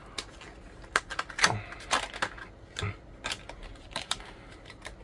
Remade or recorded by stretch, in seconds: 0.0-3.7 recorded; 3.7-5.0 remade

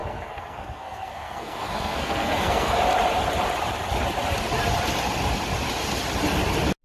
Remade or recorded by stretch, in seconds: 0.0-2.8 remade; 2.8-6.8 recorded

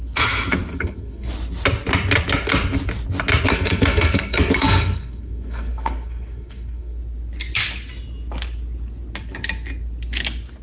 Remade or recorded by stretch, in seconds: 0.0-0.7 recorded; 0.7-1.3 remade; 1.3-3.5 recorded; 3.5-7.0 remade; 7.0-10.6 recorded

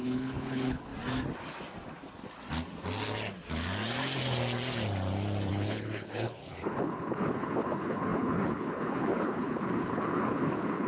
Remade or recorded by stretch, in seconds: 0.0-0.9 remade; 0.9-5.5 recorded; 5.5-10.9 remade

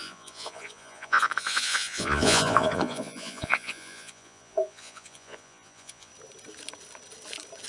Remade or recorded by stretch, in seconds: 0.0-6.1 remade; 6.1-7.7 recorded